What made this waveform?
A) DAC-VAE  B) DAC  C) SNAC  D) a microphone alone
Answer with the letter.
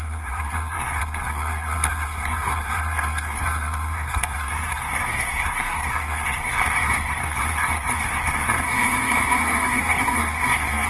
C